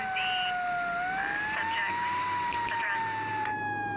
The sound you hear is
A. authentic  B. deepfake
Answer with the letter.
A